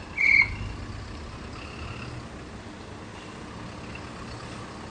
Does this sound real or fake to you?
real